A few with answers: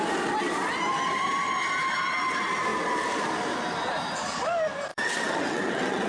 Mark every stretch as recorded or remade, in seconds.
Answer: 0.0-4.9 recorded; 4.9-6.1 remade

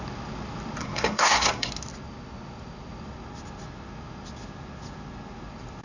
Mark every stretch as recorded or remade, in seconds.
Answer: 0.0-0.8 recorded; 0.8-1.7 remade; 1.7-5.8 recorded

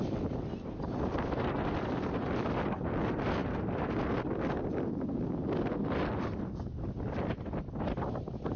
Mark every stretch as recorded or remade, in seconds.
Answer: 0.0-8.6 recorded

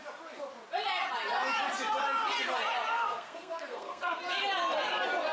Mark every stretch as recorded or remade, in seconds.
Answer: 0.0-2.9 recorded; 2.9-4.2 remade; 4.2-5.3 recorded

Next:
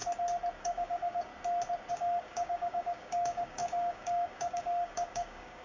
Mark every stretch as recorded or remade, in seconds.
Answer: 0.0-0.6 recorded; 0.6-1.3 remade; 1.3-1.9 recorded; 1.9-5.6 remade

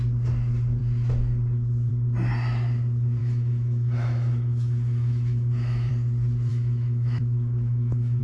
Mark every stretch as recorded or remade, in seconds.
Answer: 0.0-3.2 recorded; 3.2-5.9 remade; 5.9-6.5 recorded; 6.5-8.2 remade

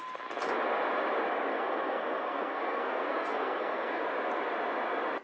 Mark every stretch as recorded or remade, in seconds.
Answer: 0.0-1.5 recorded; 1.5-4.0 remade; 4.0-5.2 recorded

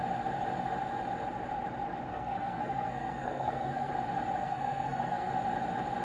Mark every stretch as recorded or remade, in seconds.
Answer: 0.0-2.1 recorded; 2.1-3.9 remade; 3.9-4.4 recorded; 4.4-5.3 remade; 5.3-6.0 recorded